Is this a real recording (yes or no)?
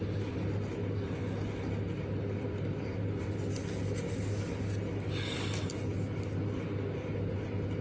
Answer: yes